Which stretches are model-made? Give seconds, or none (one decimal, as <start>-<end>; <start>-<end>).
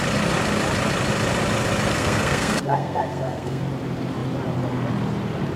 2.0-3.6